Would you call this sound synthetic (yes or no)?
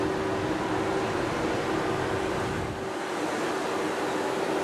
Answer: no